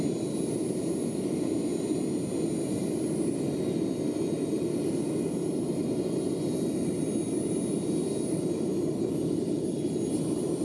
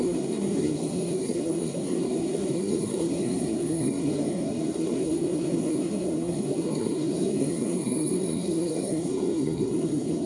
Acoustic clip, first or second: first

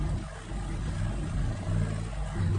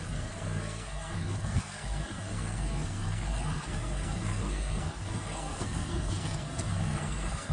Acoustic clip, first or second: first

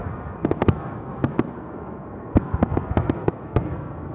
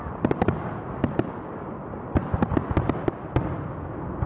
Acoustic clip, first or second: second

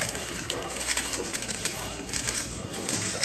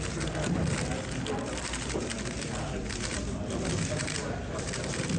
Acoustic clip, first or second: second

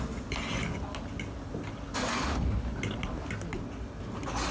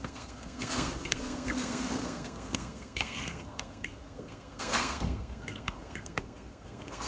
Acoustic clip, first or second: first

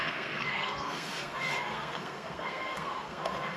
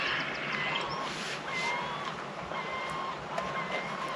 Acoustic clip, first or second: second